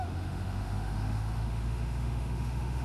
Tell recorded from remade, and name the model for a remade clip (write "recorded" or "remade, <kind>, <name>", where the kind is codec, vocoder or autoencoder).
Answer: remade, autoencoder, DAC-VAE